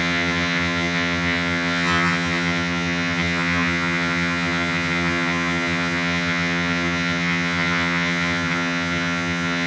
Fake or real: fake